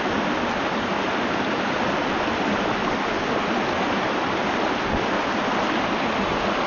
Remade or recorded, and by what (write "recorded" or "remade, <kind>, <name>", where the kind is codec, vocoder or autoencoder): recorded